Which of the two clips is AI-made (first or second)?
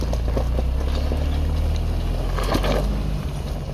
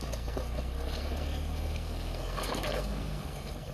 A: second